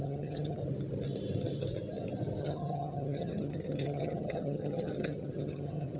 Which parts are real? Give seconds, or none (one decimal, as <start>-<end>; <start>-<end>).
0.6-2.4